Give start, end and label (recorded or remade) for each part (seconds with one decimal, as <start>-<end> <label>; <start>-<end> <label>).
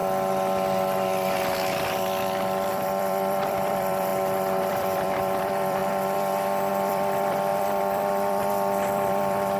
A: 0.0-2.7 recorded; 2.7-4.1 remade; 4.1-4.7 recorded; 4.7-9.6 remade